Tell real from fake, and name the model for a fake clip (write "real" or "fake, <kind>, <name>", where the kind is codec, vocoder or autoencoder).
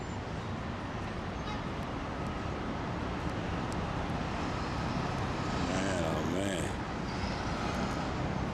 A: real